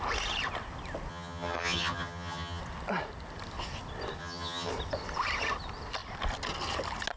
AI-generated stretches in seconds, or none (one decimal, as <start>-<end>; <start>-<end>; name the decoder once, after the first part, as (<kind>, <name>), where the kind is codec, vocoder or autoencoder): 1.1-2.6 (vocoder, HiFi-GAN); 4.2-4.7